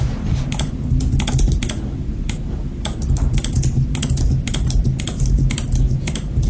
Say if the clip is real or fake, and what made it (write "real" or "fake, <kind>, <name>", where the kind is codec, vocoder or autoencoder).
real